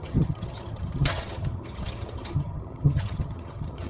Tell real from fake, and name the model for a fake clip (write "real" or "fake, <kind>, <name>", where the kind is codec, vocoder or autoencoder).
fake, vocoder, HiFi-GAN